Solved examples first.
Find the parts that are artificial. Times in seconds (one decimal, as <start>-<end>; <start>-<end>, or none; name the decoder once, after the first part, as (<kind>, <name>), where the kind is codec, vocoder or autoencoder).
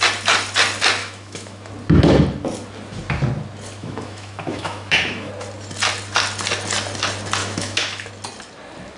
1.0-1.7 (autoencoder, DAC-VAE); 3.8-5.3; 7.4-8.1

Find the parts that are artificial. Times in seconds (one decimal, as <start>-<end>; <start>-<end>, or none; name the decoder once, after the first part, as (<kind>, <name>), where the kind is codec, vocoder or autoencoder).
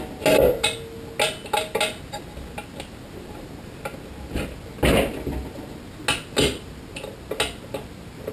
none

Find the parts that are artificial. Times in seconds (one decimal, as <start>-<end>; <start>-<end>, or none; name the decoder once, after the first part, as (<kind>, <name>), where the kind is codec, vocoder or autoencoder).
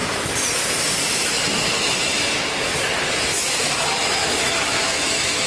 3.3-5.5 (autoencoder, DAC-VAE)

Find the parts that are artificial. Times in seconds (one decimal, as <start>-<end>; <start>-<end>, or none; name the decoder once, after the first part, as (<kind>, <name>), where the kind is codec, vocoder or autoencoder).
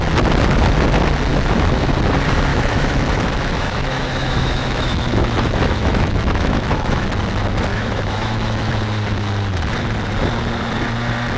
1.3-1.9 (autoencoder, DAC-VAE); 2.5-7.1; 7.7-8.7